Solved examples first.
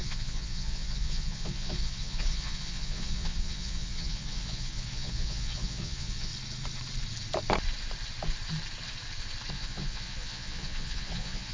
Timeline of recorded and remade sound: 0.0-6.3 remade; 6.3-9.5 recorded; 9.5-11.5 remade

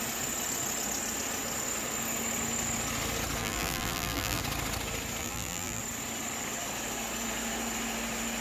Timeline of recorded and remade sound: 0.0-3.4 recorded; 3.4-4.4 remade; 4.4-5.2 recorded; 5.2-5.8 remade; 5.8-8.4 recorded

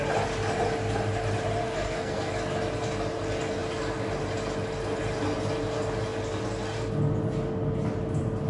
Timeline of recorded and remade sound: 0.0-1.6 recorded; 1.6-2.3 remade; 2.3-8.5 recorded

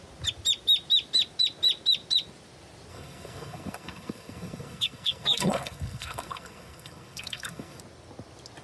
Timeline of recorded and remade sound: 0.0-2.9 recorded; 2.9-7.8 remade; 7.8-8.6 recorded

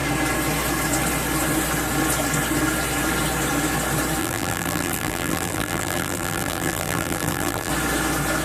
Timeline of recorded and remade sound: 0.0-4.2 recorded; 4.2-7.7 remade; 7.7-8.4 recorded